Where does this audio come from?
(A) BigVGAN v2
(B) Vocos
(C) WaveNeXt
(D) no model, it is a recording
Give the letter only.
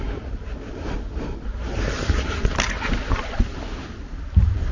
D